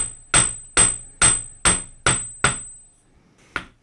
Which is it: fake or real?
real